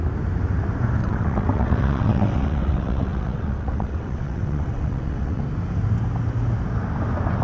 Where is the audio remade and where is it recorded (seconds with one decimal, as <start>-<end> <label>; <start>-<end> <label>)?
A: 0.0-1.0 recorded; 1.0-5.4 remade; 5.4-7.4 recorded